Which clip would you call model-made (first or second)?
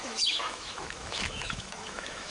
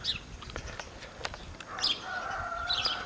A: first